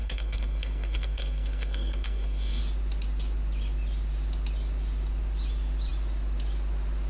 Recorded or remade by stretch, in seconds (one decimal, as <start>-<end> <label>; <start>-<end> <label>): 0.0-2.6 remade; 2.6-7.1 recorded